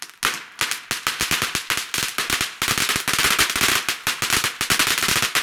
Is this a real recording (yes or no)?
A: yes